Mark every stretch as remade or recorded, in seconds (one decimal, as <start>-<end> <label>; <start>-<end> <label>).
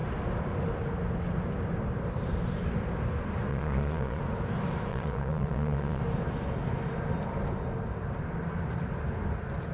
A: 0.0-3.5 recorded; 3.5-4.2 remade; 4.2-4.9 recorded; 4.9-6.0 remade; 6.0-9.7 recorded